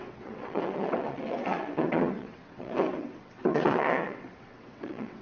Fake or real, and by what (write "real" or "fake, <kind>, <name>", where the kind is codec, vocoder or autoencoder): fake, vocoder, WaveNeXt